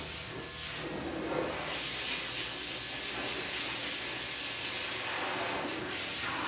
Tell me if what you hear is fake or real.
real